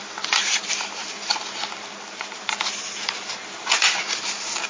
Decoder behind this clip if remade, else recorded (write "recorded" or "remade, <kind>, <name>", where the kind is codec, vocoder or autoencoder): remade, vocoder, BigVGAN v2